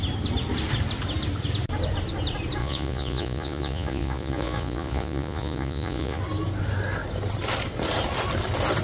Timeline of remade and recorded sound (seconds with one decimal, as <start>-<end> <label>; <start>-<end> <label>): 0.0-2.6 recorded; 2.6-6.2 remade; 6.2-8.8 recorded